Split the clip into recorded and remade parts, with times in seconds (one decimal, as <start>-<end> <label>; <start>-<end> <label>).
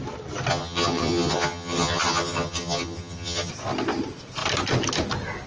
0.0-0.5 recorded; 0.5-3.5 remade; 3.5-5.5 recorded